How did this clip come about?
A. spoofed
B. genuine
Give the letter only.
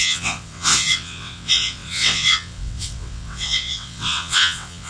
A